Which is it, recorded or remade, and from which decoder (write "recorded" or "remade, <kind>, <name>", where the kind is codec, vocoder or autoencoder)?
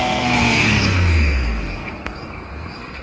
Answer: remade, codec, SNAC